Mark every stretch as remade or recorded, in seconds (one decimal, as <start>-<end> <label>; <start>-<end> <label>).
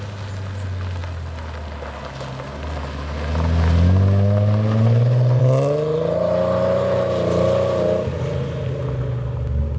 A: 0.0-9.8 recorded